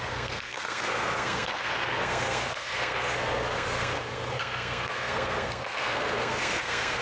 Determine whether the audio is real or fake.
fake